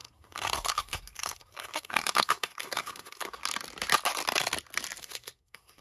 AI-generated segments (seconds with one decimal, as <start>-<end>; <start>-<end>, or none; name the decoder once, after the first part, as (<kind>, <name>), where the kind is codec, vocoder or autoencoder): 0.0-3.4 (codec, SNAC); 5.0-5.8